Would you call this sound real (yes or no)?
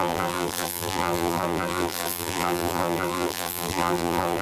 no